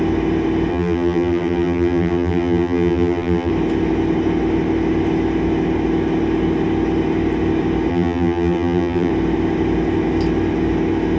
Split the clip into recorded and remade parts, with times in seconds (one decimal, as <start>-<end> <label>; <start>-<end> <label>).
0.0-0.7 recorded; 0.7-3.5 remade; 3.5-7.9 recorded; 7.9-9.1 remade; 9.1-11.2 recorded